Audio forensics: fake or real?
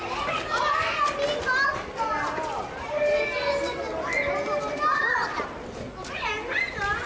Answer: real